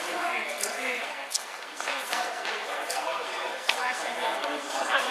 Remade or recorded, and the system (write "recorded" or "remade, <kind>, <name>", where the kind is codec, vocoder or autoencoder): remade, codec, SNAC